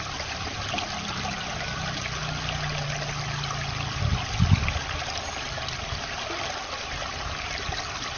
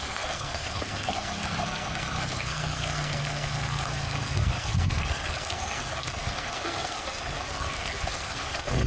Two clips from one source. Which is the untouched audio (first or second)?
first